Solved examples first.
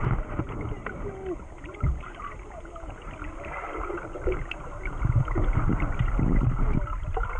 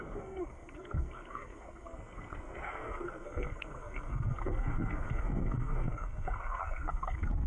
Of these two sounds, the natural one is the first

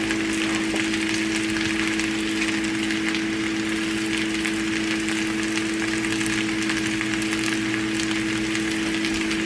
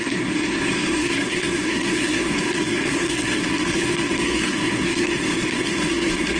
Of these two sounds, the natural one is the first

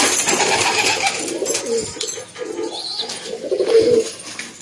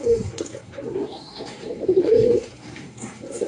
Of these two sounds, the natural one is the first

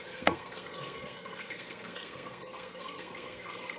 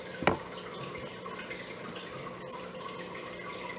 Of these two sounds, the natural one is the second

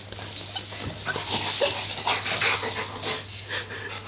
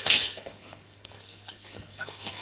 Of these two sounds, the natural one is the first